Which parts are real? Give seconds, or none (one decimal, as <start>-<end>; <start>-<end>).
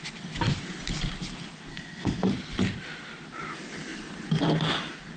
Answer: 0.0-1.7; 2.3-5.2